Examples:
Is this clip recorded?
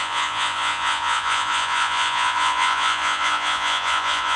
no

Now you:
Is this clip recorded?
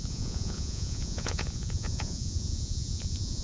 no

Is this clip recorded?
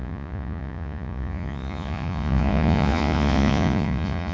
no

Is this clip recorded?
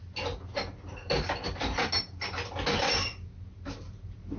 yes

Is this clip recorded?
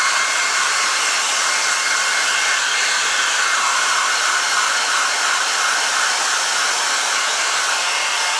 no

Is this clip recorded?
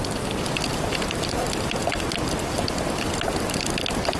yes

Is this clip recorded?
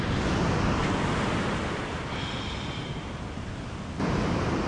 yes